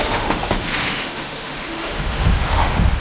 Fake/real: fake